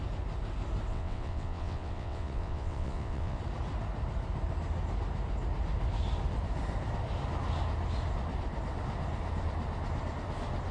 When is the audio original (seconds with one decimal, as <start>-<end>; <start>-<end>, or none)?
0.0-0.9; 3.4-10.7